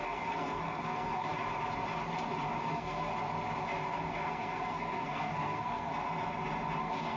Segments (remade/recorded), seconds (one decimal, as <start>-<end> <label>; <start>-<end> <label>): 0.0-1.3 remade; 1.3-2.6 recorded; 2.6-3.1 remade; 3.1-3.9 recorded; 3.9-5.9 remade; 5.9-6.8 recorded; 6.8-7.2 remade